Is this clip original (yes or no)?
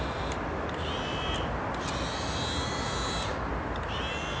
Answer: yes